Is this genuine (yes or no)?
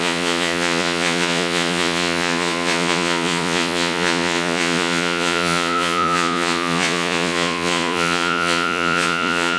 no